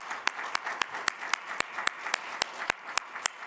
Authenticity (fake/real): real